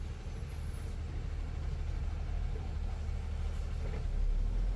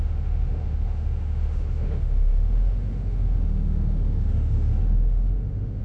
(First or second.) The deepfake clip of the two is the second